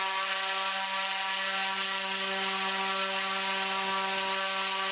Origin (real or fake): real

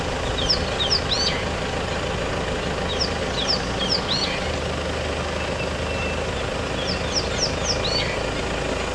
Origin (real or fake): real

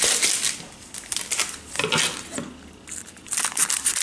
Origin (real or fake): real